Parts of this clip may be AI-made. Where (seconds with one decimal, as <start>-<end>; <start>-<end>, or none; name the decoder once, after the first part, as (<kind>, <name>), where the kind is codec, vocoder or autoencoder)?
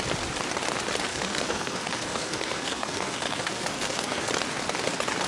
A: 1.1-4.3 (codec, SNAC)